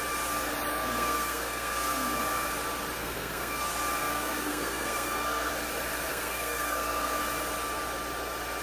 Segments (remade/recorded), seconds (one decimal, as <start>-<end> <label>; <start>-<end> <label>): 0.0-0.7 recorded; 0.7-2.2 remade; 2.2-3.0 recorded; 3.0-3.6 remade; 3.6-4.0 recorded; 4.0-5.5 remade; 5.5-6.1 recorded; 6.1-7.2 remade; 7.2-8.6 recorded